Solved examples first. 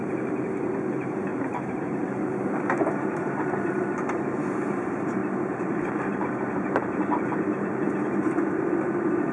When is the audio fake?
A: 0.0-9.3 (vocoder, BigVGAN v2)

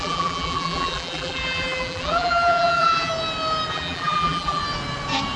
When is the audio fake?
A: 0.0-3.1 (vocoder, BigVGAN v2); 3.7-4.6

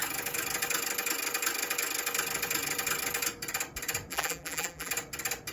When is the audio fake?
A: 4.1-4.9 (vocoder, BigVGAN v2)